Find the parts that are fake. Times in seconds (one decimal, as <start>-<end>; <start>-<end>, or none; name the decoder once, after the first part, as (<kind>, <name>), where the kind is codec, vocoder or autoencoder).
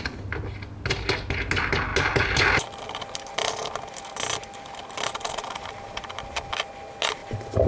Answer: none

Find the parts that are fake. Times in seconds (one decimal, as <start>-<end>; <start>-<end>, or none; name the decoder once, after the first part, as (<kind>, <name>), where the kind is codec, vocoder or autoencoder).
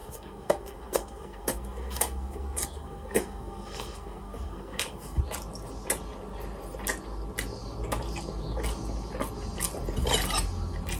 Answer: 0.0-5.2 (codec, SNAC)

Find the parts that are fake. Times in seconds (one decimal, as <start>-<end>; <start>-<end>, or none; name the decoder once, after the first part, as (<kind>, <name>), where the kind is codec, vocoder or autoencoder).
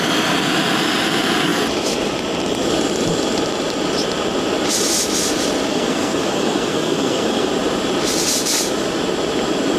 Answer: 5.7-7.5 (codec, SNAC)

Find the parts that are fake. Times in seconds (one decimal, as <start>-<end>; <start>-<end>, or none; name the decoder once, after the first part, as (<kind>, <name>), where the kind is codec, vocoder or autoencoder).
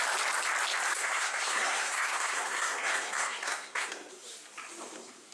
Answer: 0.9-4.1 (codec, SNAC)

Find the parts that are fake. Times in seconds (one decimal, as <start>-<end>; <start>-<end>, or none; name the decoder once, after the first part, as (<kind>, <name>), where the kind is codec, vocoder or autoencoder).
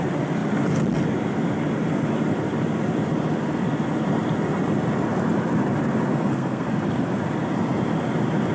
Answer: 6.1-6.7 (codec, SNAC)